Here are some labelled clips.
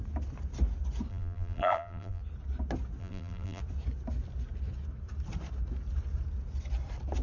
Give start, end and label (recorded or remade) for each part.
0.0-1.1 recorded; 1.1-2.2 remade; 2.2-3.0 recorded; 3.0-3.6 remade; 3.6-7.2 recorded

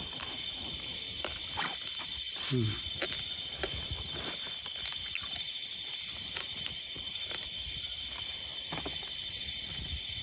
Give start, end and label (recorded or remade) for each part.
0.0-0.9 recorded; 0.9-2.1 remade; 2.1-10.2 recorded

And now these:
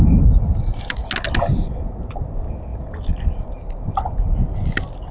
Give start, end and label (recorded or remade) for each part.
0.0-2.7 recorded; 2.7-3.9 remade; 3.9-5.1 recorded

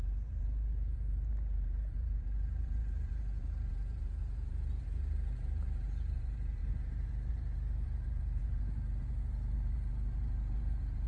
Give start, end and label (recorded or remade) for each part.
0.0-11.1 remade

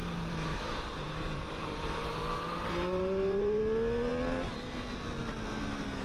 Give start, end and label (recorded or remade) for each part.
0.0-3.6 remade; 3.6-6.0 recorded